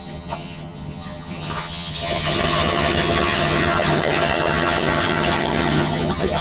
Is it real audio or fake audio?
fake